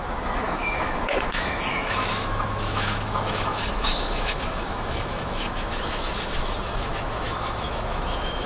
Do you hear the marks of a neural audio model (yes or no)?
yes